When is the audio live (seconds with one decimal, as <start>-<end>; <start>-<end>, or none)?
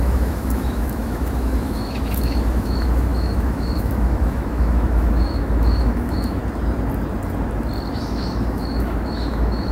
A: 6.4-7.9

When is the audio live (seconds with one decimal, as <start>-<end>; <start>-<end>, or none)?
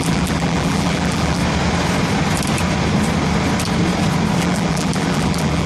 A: 1.4-4.4